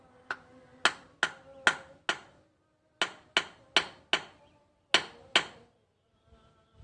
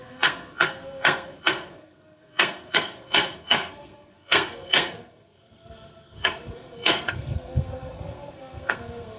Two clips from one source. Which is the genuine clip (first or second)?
first